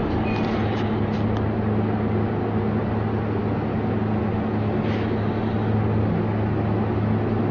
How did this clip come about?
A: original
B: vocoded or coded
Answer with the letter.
A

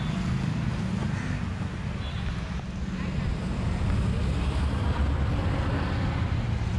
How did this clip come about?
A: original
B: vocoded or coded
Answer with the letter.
A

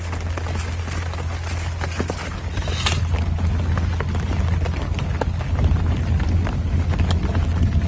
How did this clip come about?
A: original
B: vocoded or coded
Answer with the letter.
A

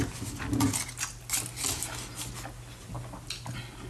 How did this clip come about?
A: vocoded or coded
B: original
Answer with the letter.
B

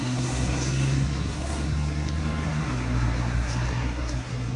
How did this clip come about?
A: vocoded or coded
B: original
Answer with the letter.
A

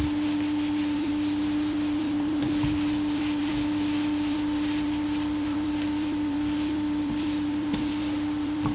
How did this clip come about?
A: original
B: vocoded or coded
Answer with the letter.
B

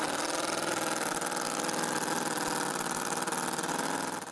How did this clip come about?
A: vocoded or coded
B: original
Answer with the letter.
B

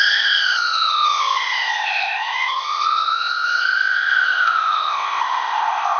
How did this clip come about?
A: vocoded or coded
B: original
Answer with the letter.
A